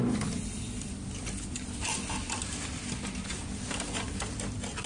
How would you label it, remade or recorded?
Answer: recorded